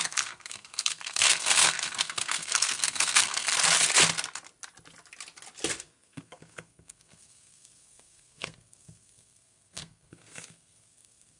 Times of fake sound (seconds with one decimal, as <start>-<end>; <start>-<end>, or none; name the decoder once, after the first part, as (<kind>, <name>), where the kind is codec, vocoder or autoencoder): 0.0-3.5 (codec, SNAC); 5.8-11.4